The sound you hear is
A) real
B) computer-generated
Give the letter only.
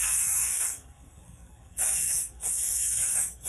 B